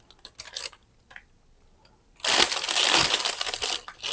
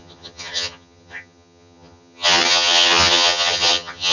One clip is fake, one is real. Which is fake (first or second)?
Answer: second